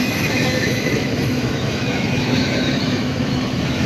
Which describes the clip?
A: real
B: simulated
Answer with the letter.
B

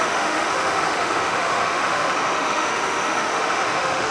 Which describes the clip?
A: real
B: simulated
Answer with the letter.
B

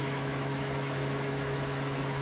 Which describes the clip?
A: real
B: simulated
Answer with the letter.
B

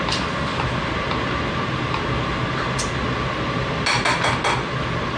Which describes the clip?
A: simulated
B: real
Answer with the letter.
B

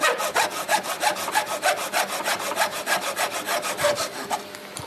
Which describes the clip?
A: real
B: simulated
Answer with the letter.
A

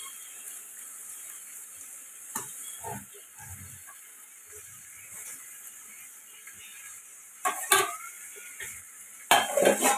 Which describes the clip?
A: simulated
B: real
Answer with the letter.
B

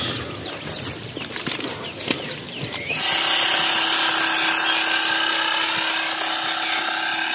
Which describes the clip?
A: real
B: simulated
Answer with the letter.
A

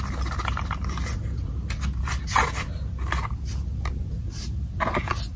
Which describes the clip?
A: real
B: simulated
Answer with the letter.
A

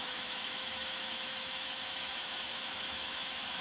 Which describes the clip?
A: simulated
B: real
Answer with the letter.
A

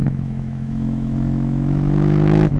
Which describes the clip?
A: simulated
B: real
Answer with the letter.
A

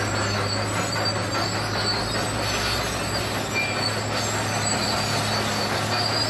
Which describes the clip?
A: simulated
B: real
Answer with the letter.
B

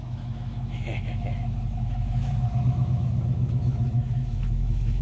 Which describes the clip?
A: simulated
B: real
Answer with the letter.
A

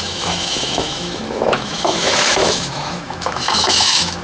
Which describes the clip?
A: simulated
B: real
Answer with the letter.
A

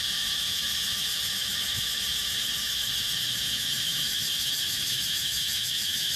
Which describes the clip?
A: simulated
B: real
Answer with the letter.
A